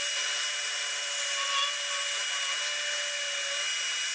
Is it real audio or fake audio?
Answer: real